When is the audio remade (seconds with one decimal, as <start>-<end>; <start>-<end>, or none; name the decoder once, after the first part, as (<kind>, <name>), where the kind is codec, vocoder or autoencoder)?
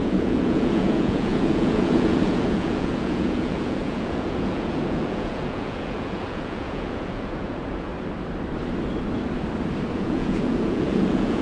0.0-7.9 (vocoder, Vocos); 10.0-11.4